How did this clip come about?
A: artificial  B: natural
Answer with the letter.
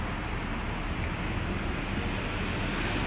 B